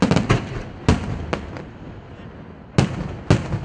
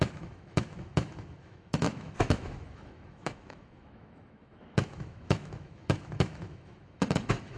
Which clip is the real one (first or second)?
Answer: first